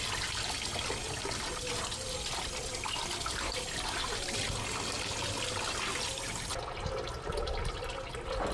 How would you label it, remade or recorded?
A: recorded